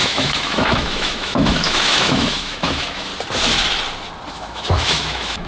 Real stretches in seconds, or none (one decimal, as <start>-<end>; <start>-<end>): 3.1-4.3